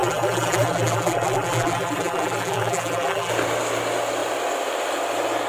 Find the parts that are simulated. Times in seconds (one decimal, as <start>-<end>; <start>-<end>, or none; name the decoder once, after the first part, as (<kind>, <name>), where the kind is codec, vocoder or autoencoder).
0.0-3.3 (vocoder, BigVGAN v2)